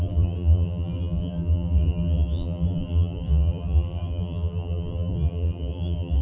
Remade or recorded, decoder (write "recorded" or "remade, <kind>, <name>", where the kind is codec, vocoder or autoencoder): remade, vocoder, BigVGAN v2